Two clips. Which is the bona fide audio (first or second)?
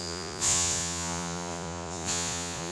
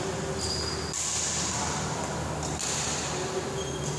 second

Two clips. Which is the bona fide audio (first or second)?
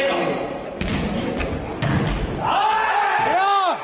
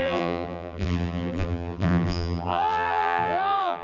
first